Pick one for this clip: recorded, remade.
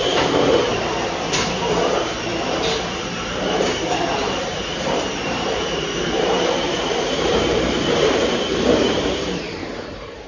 remade